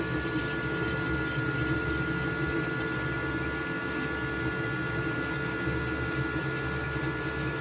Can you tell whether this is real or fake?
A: real